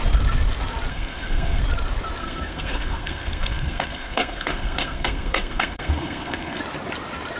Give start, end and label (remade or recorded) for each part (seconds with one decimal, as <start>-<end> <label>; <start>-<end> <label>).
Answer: 0.0-0.9 recorded; 0.9-1.6 remade; 1.6-2.2 recorded; 2.2-6.6 remade; 6.6-7.4 recorded